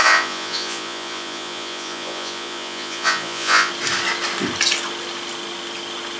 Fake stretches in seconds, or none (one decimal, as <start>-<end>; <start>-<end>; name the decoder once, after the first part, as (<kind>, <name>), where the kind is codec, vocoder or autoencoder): 0.0-3.7 (vocoder, Vocos)